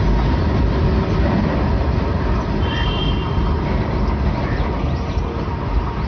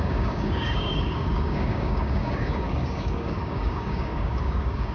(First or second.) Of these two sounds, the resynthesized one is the second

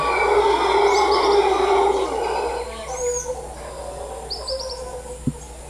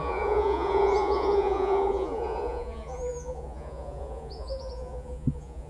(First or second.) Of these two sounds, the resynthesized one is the second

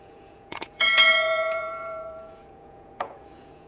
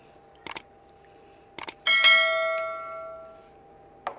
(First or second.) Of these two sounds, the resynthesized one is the first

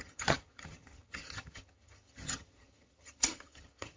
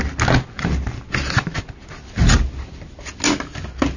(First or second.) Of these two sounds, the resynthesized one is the first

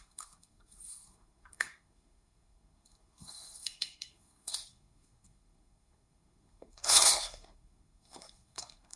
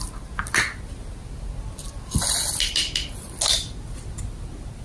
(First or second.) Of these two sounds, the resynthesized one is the first